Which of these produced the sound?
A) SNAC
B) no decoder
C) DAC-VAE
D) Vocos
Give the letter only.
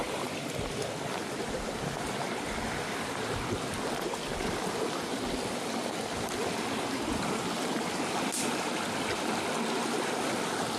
B